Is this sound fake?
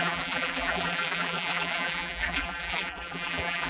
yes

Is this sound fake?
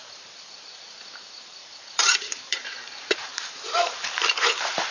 yes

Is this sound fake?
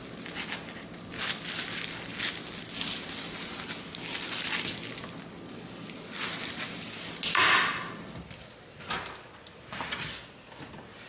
no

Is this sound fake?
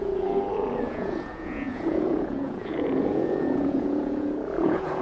yes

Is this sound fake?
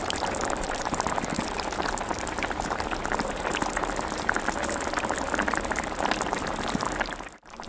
yes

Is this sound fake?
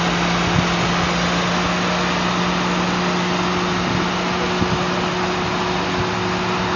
no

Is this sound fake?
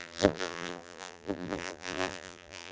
yes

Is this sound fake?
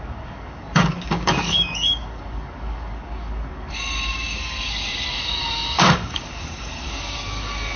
yes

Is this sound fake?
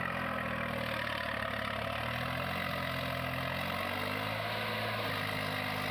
no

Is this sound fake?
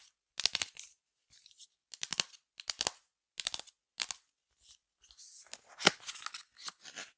no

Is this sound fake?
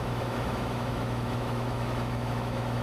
yes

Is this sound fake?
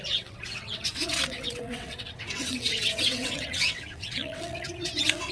yes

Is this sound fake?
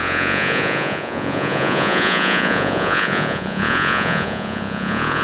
yes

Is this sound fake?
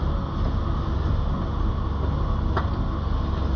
no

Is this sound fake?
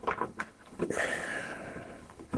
yes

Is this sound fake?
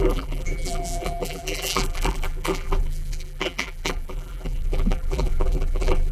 yes